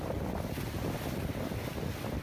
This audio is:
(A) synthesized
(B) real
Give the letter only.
B